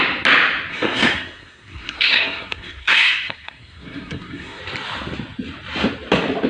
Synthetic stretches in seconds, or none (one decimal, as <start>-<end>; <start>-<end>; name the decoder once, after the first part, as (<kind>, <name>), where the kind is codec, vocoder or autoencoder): 0.7-4.6 (codec, SNAC)